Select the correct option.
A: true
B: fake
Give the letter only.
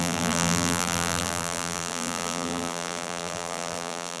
B